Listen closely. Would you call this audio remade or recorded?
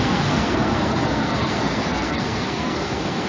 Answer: remade